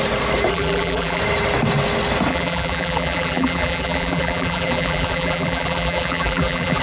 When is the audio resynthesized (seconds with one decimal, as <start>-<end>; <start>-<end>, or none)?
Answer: 0.5-1.2; 2.3-6.8